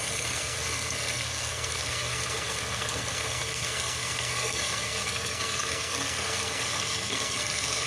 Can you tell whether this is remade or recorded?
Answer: remade